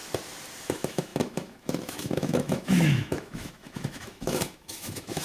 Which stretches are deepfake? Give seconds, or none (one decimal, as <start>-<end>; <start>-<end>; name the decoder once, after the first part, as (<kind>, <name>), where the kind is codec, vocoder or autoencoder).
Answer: 0.6-5.2 (autoencoder, DAC-VAE)